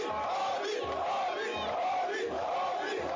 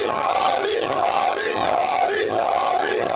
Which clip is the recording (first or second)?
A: first